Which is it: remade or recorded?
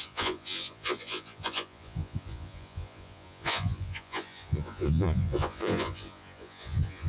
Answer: remade